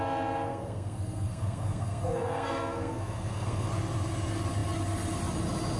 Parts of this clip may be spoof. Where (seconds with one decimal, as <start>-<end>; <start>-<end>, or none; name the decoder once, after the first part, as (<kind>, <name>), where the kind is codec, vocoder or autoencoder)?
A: 0.5-3.7 (codec, SNAC)